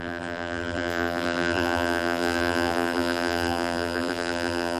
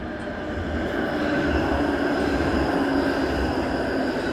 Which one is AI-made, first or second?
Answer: first